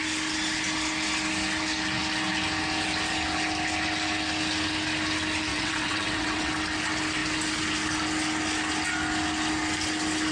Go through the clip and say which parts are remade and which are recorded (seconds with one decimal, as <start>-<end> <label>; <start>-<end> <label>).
0.0-5.5 recorded; 5.5-6.5 remade; 6.5-10.3 recorded